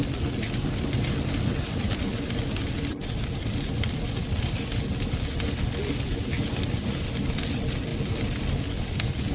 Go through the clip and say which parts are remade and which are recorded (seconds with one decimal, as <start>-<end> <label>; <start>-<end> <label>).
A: 0.0-9.3 recorded

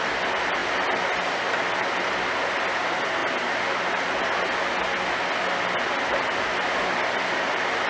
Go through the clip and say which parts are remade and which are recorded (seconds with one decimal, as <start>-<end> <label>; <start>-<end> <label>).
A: 0.0-7.9 recorded

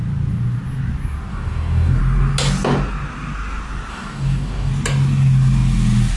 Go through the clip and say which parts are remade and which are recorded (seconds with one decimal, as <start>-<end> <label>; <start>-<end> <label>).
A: 0.0-1.3 recorded; 1.3-2.0 remade; 2.0-3.9 recorded; 3.9-4.7 remade; 4.7-6.2 recorded

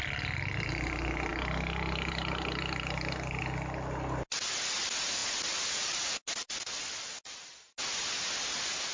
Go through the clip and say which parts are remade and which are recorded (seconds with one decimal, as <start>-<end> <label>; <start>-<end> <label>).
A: 0.0-8.9 recorded

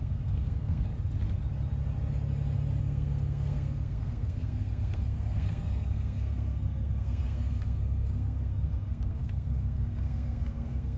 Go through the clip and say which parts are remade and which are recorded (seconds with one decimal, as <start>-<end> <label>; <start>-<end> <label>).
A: 0.0-0.9 remade; 0.9-2.8 recorded; 2.8-11.0 remade

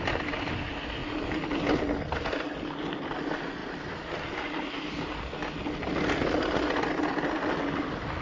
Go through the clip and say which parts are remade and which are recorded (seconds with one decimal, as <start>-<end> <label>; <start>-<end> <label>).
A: 0.0-8.2 recorded